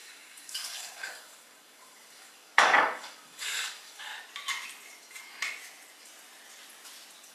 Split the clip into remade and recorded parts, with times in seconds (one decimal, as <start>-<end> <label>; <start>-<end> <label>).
0.0-4.1 remade; 4.1-7.3 recorded